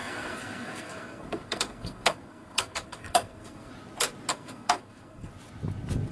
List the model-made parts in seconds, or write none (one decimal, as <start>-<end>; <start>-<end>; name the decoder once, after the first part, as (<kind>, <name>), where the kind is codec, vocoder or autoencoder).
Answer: 0.0-3.7 (codec, SNAC); 4.3-5.3